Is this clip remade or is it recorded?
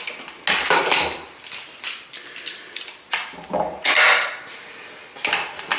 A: recorded